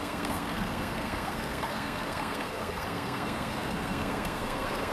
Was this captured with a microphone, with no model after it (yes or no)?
no